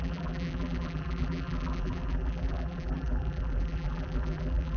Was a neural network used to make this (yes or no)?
yes